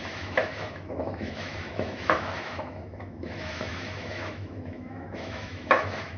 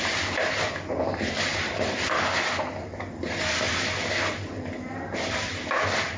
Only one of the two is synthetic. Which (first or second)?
first